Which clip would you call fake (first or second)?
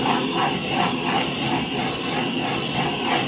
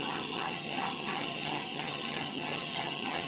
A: second